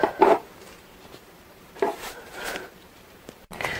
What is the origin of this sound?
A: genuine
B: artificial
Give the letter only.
B